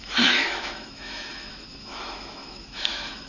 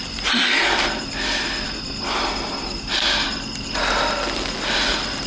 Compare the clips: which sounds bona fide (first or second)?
second